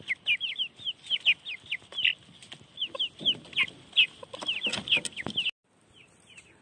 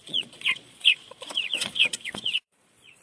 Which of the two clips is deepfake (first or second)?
second